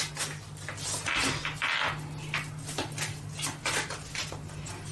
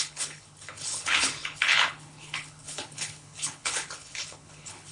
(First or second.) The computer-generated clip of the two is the second